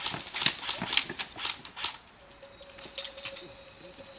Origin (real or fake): real